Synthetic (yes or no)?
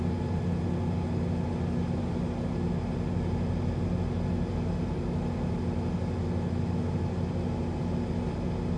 no